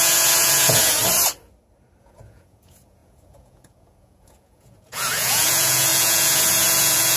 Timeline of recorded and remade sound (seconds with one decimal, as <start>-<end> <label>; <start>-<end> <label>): 0.0-1.0 remade; 1.0-2.0 recorded; 2.0-7.2 remade